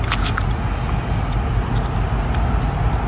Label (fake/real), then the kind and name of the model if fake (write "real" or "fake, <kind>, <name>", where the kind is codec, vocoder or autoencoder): real